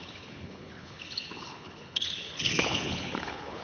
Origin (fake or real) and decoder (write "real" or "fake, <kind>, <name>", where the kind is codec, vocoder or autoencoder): fake, codec, HILCodec